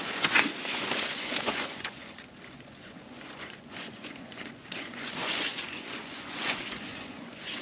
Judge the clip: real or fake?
fake